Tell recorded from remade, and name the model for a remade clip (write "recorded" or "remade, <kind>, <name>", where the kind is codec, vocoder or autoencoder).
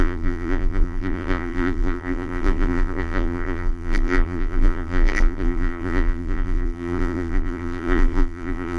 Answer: remade, vocoder, BigVGAN v2